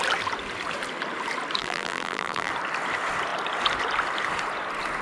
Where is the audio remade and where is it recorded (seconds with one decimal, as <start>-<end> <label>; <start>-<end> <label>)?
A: 0.0-1.6 recorded; 1.6-2.5 remade; 2.5-5.0 recorded